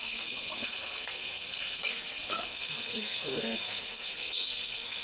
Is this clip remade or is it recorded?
remade